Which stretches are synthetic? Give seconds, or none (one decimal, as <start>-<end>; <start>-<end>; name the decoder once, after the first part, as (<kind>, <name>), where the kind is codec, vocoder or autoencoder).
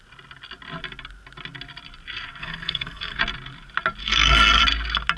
2.4-3.2 (codec, SNAC); 4.0-4.6